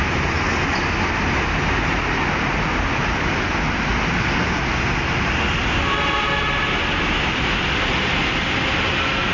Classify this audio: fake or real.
real